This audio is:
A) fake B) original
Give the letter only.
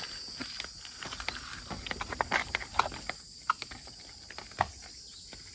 B